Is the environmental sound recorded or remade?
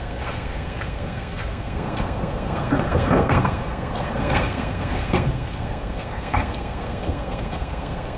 remade